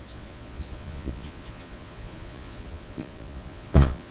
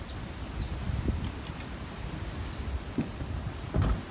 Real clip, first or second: second